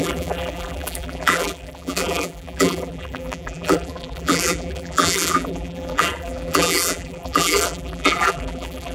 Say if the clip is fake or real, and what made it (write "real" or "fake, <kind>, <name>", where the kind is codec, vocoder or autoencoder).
fake, vocoder, BigVGAN v2